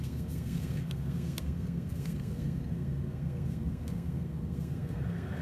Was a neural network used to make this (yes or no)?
yes